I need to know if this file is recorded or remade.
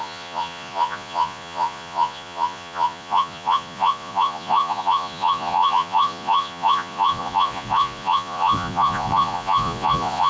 remade